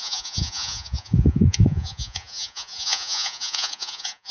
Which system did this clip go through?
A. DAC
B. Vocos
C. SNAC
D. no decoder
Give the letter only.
B